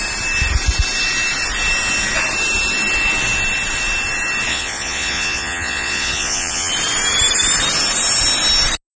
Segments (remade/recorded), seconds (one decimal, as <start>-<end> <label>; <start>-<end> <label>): 0.0-4.5 recorded; 4.5-6.7 remade; 6.7-9.0 recorded